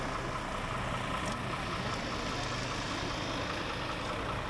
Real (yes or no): yes